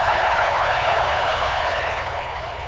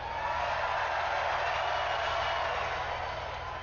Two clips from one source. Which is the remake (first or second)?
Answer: first